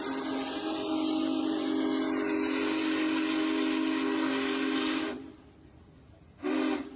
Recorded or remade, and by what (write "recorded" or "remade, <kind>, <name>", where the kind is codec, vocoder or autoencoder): recorded